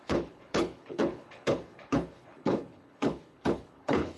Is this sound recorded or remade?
remade